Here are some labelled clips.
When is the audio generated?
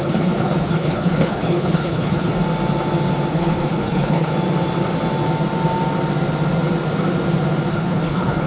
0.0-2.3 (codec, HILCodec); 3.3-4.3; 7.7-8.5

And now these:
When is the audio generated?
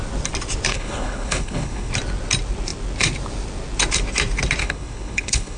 0.7-1.9 (codec, HILCodec); 4.6-5.6